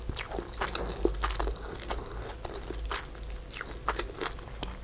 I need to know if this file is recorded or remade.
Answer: recorded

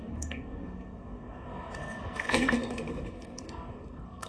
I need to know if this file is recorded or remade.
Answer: remade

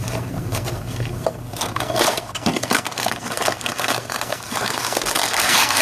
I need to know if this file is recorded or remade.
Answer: remade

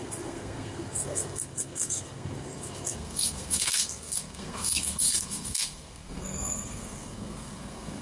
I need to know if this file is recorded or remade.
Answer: remade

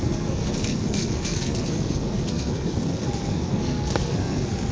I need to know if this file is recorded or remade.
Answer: remade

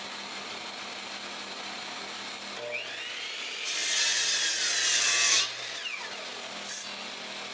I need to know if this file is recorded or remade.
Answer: recorded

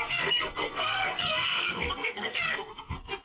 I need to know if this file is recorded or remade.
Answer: remade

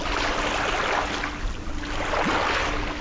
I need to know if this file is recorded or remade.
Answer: recorded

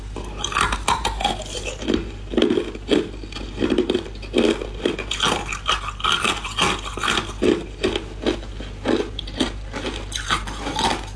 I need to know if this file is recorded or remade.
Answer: recorded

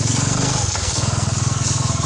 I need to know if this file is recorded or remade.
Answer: remade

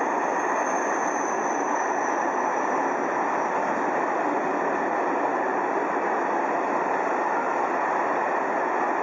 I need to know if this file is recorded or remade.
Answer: recorded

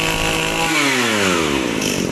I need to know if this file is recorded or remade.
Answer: recorded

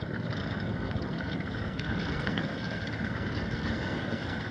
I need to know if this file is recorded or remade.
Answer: remade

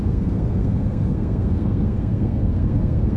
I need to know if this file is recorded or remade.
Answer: remade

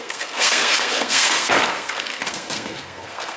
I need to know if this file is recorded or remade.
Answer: remade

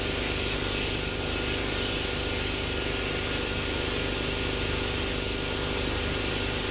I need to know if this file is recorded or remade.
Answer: recorded